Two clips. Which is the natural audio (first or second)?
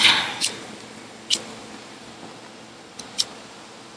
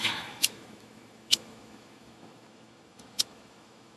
first